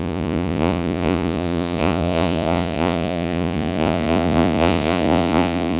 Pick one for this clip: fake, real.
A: fake